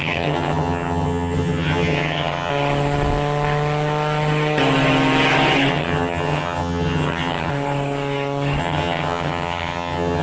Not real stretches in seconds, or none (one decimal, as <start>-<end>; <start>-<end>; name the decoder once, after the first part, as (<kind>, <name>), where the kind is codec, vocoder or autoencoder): 0.0-2.5 (vocoder, HiFi-GAN); 5.7-7.5; 8.6-10.2